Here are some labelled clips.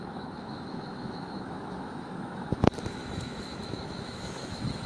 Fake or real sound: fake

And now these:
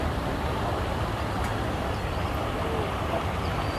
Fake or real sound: real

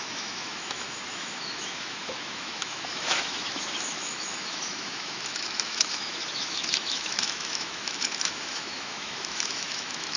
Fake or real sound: fake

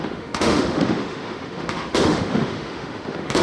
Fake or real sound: fake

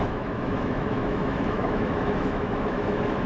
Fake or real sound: fake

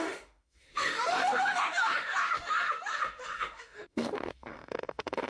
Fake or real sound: fake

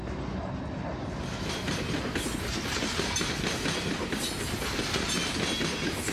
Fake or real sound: real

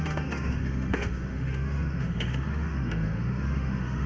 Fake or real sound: fake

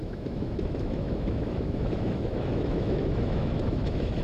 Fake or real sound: fake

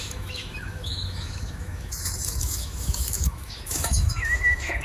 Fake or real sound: fake